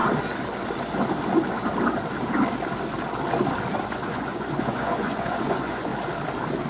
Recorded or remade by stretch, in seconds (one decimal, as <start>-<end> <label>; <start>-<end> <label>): 0.0-3.8 recorded; 3.8-5.9 remade; 5.9-6.7 recorded